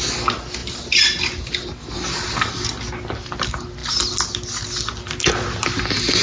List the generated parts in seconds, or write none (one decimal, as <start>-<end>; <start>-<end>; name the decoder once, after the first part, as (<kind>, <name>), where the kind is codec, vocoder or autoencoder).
none